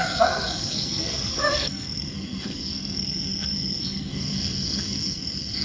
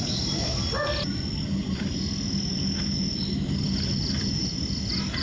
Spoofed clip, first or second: first